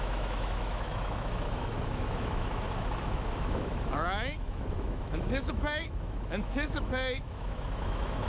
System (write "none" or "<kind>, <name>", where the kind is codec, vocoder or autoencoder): autoencoder, DAC-VAE